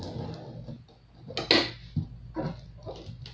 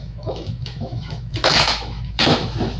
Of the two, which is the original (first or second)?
first